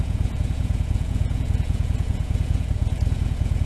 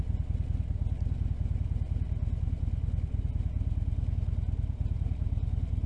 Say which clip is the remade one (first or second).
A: first